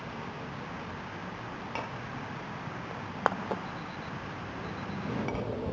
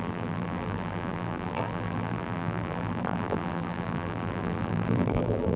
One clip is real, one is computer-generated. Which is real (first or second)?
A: first